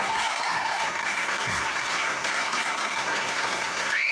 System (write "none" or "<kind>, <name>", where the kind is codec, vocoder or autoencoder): codec, SNAC